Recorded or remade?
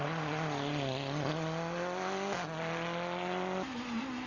recorded